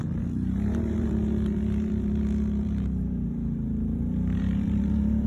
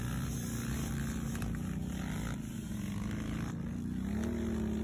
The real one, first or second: second